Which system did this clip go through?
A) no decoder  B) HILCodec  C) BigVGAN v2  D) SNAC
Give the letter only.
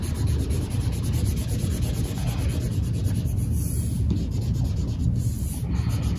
A